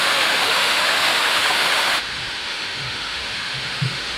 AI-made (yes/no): yes